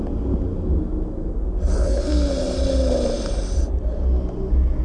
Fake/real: real